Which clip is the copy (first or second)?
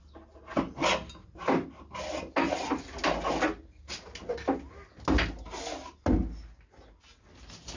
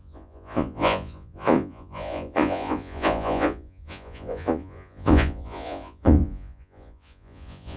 second